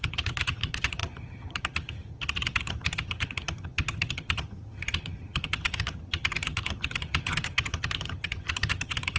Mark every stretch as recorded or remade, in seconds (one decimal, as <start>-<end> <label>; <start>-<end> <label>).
0.0-9.2 remade